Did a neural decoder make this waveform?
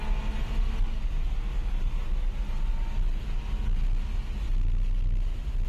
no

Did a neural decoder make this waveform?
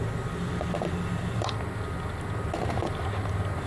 yes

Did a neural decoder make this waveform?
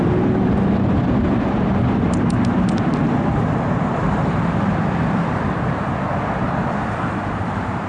yes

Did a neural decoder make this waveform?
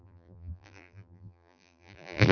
yes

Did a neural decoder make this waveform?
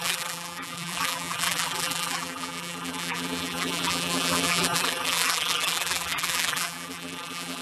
yes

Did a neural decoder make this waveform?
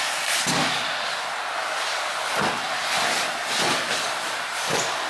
no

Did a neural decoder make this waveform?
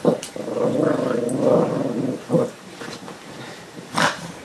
yes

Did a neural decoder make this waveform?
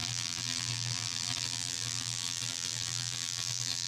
yes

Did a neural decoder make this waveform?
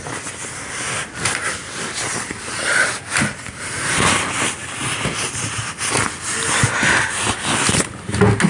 no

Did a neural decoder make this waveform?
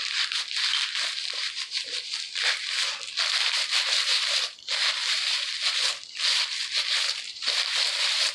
yes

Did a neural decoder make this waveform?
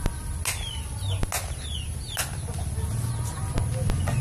no